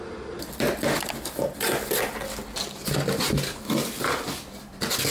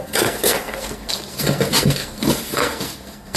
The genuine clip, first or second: first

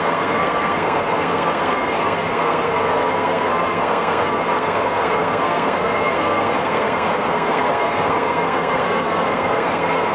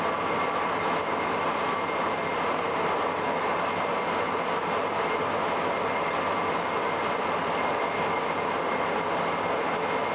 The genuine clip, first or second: second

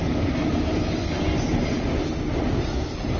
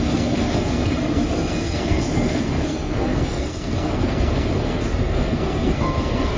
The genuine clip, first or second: first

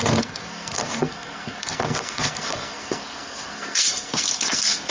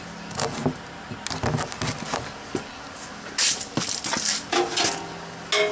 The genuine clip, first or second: second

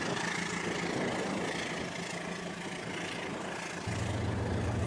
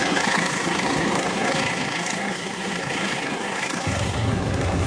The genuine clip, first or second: first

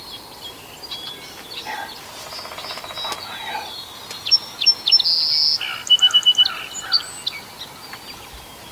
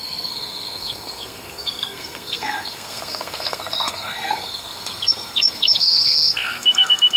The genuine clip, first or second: first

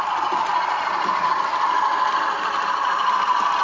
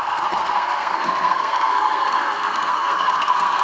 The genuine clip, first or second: first